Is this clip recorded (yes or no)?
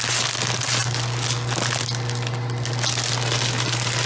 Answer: yes